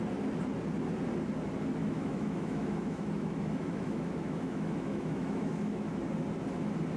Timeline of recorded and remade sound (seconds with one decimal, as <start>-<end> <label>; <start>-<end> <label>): 0.0-1.8 recorded; 1.8-6.0 remade; 6.0-7.0 recorded